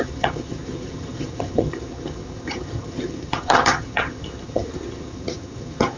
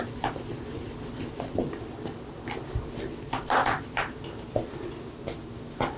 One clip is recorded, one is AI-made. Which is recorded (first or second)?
second